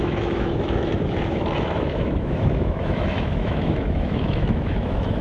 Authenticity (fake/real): fake